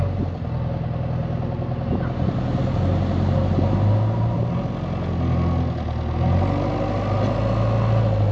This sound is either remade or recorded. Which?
recorded